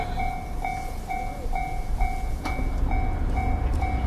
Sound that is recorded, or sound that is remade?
recorded